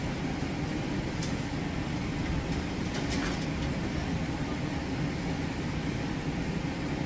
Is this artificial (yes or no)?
no